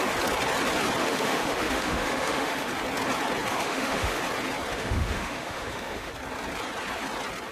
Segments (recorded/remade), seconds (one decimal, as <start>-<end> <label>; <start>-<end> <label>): 0.0-1.0 recorded; 1.0-2.7 remade; 2.7-3.5 recorded; 3.5-4.2 remade; 4.2-4.7 recorded; 4.7-6.1 remade; 6.1-7.5 recorded